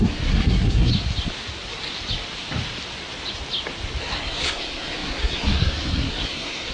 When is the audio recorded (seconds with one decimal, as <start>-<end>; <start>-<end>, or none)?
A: 0.9-4.0